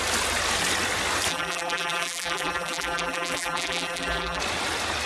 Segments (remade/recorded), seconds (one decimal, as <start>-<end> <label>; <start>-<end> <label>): 0.0-1.3 recorded; 1.3-4.4 remade; 4.4-5.1 recorded